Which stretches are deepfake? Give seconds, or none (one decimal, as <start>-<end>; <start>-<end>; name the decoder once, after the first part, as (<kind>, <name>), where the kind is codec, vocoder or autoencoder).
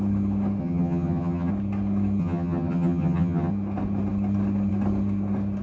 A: 0.6-1.5 (vocoder, HiFi-GAN); 2.2-3.5